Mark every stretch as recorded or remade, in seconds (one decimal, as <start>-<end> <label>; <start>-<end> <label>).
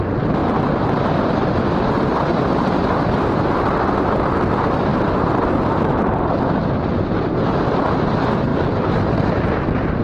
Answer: 0.0-10.0 recorded